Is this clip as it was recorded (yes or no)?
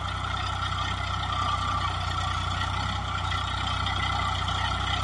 yes